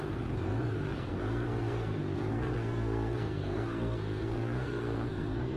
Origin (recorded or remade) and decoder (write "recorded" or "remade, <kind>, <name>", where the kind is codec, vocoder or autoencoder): remade, codec, SNAC